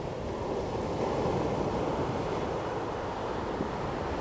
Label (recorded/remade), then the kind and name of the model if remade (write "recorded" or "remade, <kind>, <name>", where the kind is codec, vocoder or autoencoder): recorded